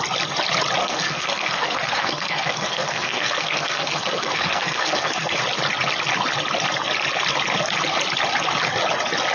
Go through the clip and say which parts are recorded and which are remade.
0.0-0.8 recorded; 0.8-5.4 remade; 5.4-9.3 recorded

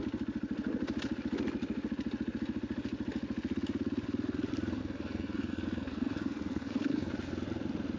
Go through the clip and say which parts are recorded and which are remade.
0.0-4.8 recorded; 4.8-7.1 remade; 7.1-8.0 recorded

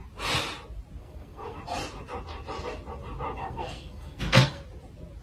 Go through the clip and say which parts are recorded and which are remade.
0.0-1.0 recorded; 1.0-1.6 remade; 1.6-3.4 recorded; 3.4-4.6 remade; 4.6-5.2 recorded